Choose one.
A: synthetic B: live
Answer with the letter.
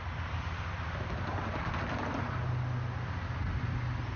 B